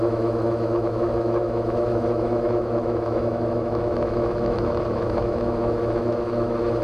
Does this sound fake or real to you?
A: fake